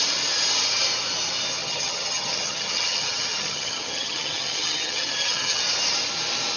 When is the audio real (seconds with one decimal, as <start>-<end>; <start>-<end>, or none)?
0.0-1.6; 5.6-6.6